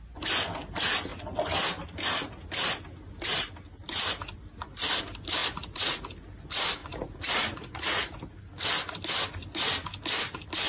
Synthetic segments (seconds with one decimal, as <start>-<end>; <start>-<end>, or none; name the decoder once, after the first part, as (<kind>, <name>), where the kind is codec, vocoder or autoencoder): 5.4-6.0 (vocoder, Vocos); 6.8-8.2